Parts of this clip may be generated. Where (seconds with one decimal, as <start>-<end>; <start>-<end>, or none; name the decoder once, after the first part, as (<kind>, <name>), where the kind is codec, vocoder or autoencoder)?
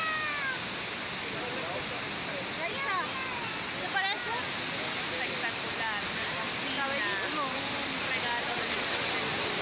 8.5-9.1 (vocoder, WaveNeXt)